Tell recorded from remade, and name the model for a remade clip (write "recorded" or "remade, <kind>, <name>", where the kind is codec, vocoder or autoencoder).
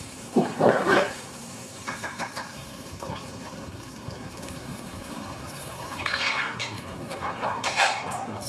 remade, codec, SNAC